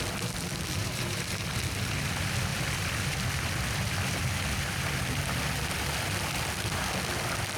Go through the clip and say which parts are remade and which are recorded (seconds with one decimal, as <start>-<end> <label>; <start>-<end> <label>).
0.0-0.8 recorded; 0.8-1.5 remade; 1.5-7.6 recorded